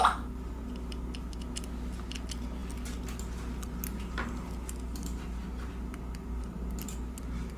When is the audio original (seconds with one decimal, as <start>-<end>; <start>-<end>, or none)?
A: 0.0-7.6